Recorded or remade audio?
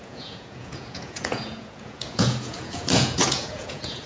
remade